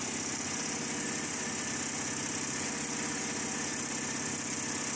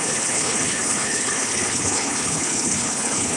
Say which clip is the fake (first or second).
second